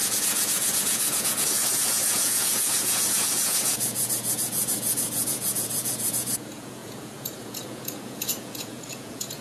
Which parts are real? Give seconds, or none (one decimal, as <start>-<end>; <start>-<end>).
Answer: none